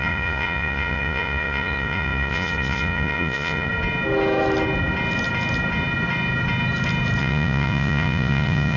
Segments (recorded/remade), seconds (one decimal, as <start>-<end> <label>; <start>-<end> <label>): 0.0-3.7 remade; 3.7-7.2 recorded; 7.2-8.8 remade